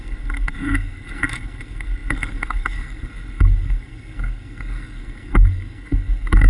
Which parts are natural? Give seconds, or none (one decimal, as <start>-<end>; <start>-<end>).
none